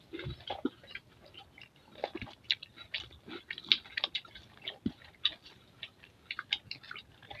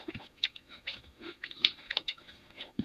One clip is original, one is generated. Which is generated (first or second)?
second